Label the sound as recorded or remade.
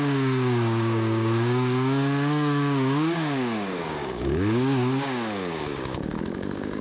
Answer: remade